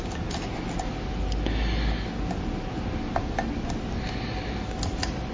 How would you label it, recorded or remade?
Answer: recorded